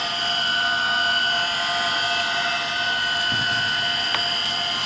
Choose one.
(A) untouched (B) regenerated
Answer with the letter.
A